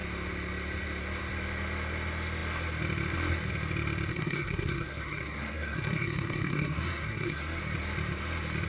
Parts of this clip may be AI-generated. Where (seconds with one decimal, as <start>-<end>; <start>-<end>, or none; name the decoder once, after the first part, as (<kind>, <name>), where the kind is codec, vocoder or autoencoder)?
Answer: 4.1-7.6 (codec, SNAC)